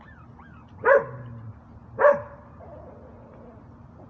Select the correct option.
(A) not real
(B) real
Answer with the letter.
B